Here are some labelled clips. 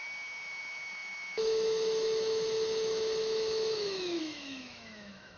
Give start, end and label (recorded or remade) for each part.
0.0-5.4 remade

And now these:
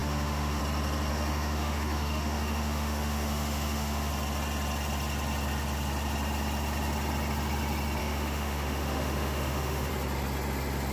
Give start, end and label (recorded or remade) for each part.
0.0-0.6 remade; 0.6-1.1 recorded; 1.1-4.1 remade; 4.1-8.0 recorded; 8.0-9.9 remade; 9.9-10.9 recorded

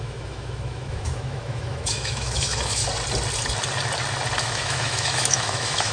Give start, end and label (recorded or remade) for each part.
0.0-2.8 remade; 2.8-4.4 recorded; 4.4-5.9 remade

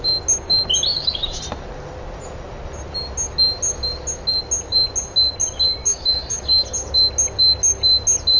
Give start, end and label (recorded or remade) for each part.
0.0-0.9 recorded; 0.9-1.4 remade; 1.4-5.8 recorded; 5.8-6.4 remade; 6.4-8.4 recorded

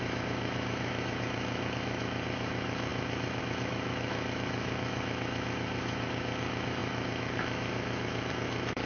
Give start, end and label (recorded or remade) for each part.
0.0-8.9 remade

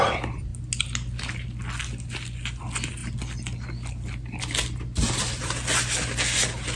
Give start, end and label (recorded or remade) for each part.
0.0-6.8 recorded